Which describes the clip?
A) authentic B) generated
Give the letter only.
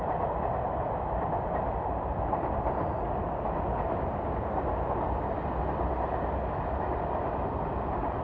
A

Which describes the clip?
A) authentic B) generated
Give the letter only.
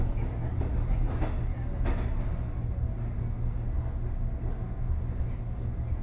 A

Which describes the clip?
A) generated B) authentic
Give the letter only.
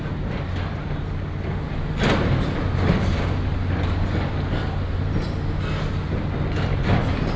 B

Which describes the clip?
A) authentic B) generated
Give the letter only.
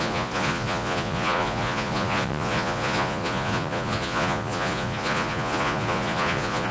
B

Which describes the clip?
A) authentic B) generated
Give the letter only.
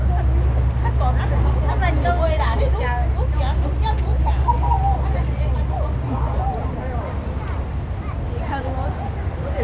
A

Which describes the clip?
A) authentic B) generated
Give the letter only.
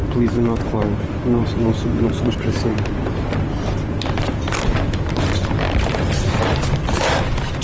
B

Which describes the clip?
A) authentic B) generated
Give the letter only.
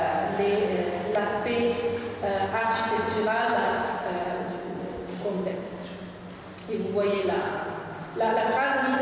A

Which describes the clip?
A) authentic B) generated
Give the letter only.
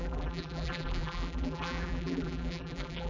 B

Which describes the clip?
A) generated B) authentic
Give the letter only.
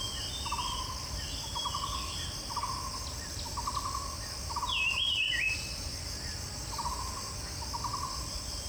B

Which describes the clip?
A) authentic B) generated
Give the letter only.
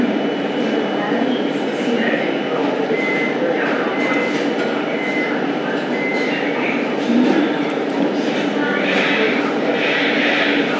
B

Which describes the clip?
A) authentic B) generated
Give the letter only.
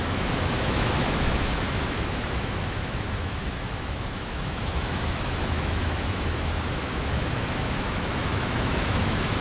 B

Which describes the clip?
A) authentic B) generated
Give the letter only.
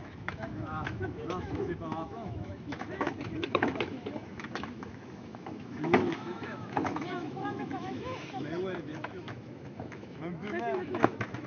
B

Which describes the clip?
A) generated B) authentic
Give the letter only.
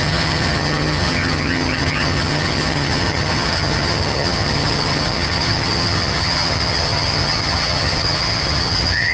A